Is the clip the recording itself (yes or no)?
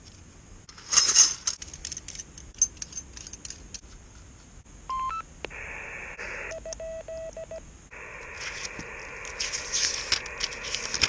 yes